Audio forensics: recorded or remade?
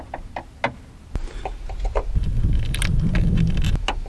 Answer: recorded